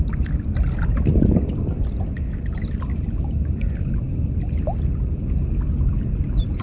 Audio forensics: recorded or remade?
recorded